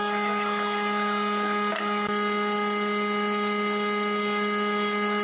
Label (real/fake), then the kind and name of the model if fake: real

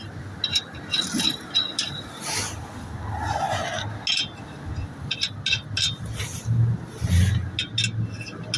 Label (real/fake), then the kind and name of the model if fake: real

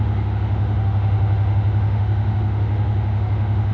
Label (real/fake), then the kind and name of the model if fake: fake, autoencoder, DAC-VAE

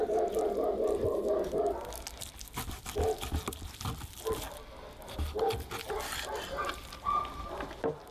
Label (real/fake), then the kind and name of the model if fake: real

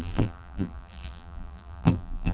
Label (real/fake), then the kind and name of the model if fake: fake, vocoder, BigVGAN v2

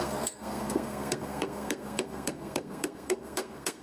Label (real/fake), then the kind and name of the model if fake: fake, codec, SNAC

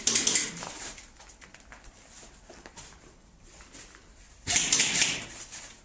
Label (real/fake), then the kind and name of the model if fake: fake, vocoder, BigVGAN v2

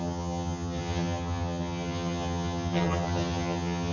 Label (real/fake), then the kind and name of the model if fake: fake, vocoder, HiFi-GAN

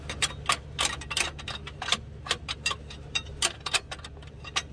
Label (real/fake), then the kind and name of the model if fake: real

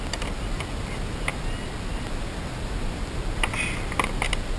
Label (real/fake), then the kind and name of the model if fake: real